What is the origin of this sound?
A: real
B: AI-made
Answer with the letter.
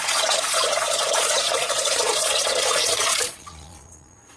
B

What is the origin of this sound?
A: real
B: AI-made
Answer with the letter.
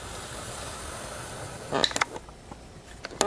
A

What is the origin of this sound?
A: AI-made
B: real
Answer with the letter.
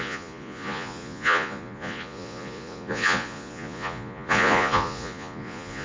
A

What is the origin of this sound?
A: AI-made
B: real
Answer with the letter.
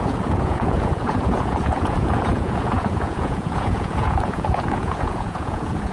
A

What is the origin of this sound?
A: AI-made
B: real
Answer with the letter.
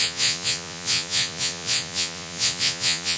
A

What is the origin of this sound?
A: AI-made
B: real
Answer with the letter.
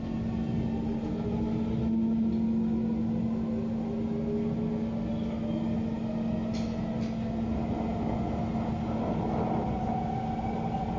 B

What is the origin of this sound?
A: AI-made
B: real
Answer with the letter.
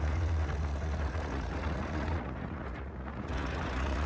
A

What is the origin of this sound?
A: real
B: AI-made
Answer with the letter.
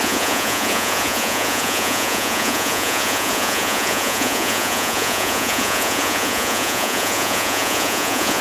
B